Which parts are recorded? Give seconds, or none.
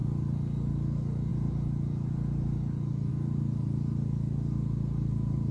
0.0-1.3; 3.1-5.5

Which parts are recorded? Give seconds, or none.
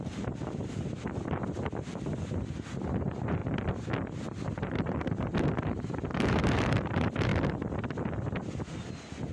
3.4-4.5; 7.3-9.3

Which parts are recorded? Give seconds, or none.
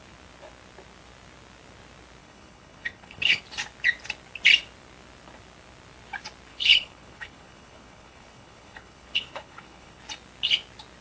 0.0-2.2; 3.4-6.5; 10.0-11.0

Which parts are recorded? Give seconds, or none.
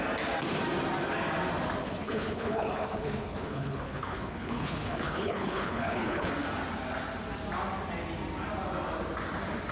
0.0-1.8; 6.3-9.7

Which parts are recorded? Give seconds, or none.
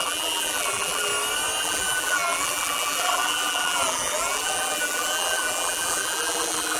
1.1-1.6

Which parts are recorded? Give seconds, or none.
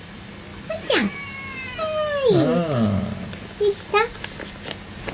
0.0-5.1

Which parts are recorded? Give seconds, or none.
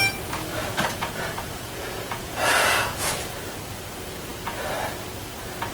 0.0-0.6; 3.1-5.7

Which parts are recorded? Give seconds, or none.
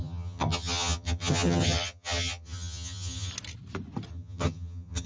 3.3-4.1